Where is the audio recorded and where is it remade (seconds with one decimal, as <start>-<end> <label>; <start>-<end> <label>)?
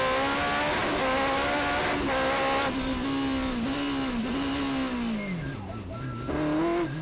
0.0-7.0 recorded